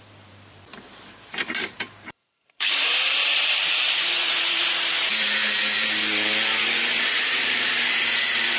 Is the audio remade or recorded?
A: remade